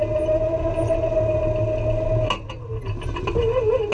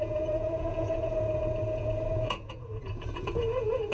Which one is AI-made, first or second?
second